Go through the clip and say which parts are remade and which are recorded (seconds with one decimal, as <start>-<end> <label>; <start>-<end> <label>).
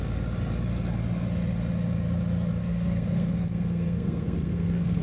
0.0-2.6 recorded; 2.6-5.0 remade